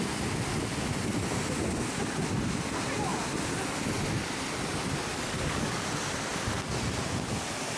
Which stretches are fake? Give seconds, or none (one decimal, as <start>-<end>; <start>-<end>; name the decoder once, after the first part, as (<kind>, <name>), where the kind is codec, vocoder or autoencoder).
5.1-5.8 (codec, DAC)